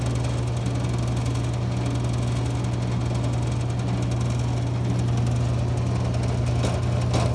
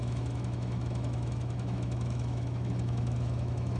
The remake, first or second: second